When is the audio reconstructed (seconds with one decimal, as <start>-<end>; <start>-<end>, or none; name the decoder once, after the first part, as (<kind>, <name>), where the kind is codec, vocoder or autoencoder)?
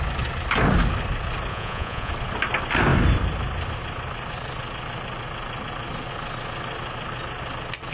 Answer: 1.5-2.1 (vocoder, Vocos)